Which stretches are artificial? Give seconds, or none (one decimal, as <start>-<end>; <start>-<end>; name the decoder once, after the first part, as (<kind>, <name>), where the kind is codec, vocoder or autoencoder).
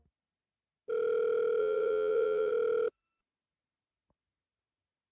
1.6-2.5 (vocoder, WaveNeXt)